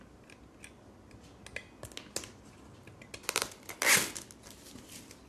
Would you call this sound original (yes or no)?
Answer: yes